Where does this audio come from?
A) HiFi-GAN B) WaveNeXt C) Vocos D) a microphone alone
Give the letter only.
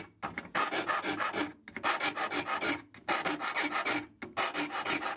D